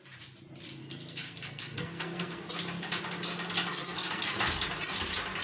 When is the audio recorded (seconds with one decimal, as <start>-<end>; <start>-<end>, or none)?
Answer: 0.0-0.8; 2.4-3.7; 4.4-5.4